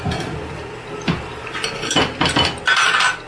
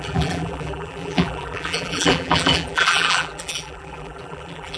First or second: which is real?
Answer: first